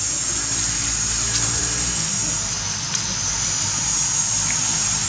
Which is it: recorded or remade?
recorded